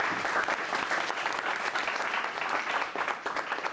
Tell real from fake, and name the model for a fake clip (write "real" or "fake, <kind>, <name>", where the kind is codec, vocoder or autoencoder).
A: fake, vocoder, BigVGAN v2